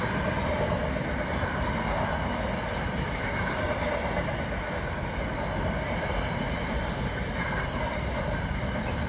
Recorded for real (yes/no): yes